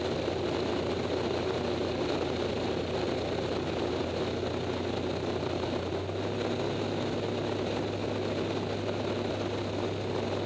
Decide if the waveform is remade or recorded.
recorded